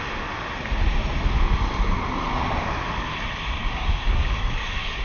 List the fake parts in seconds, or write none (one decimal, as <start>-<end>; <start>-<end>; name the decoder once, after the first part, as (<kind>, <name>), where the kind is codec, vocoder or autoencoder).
3.6-5.0 (codec, DAC)